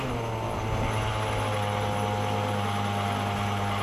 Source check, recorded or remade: recorded